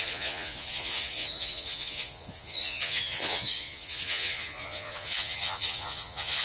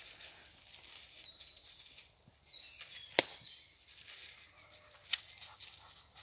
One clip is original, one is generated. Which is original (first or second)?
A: second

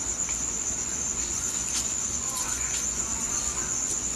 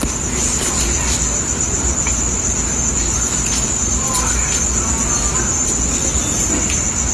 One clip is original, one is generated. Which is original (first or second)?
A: second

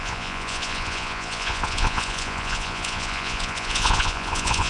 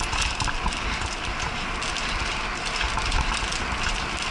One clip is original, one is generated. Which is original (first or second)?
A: second